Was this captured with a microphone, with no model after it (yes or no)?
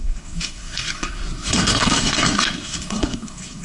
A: no